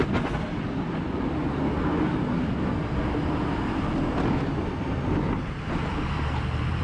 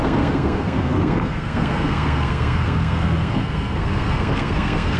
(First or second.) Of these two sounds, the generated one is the second